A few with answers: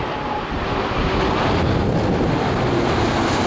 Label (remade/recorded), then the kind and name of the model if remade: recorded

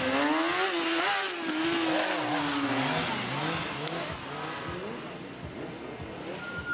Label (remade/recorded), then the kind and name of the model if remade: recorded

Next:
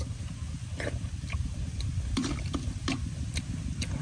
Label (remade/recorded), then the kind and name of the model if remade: recorded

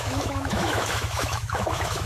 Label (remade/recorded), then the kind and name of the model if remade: remade, autoencoder, DAC-VAE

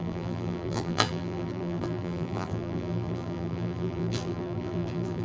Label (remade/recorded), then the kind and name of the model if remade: remade, vocoder, BigVGAN v2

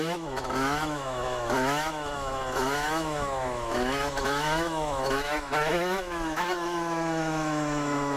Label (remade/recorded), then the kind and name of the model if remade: remade, autoencoder, DAC-VAE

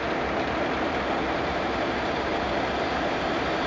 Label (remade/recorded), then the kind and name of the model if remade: recorded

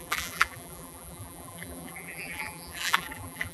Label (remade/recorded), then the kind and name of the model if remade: remade, vocoder, BigVGAN v2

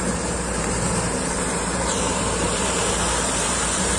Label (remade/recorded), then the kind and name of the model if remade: remade, vocoder, BigVGAN v2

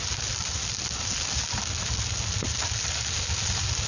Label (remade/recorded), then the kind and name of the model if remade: recorded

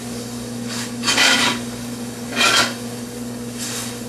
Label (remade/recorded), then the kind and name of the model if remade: remade, codec, DAC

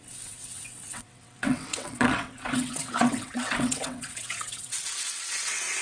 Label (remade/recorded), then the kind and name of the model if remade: remade, vocoder, WaveNeXt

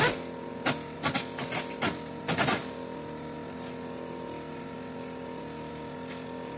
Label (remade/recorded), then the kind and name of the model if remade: recorded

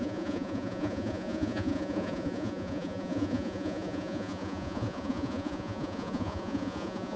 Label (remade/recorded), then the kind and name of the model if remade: remade, vocoder, Vocos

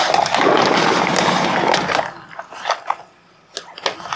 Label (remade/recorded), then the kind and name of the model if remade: recorded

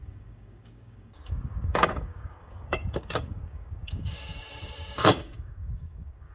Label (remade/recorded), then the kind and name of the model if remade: remade, codec, DAC